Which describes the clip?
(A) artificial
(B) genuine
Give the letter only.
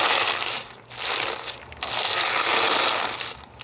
B